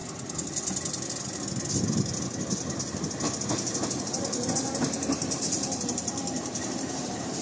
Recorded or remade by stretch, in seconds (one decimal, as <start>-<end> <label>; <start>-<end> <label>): 0.0-4.0 recorded; 4.0-7.4 remade